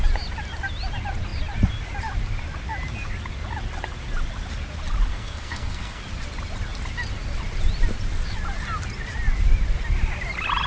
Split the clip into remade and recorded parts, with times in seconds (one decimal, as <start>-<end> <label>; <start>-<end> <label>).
0.0-5.1 recorded; 5.1-6.0 remade; 6.0-10.7 recorded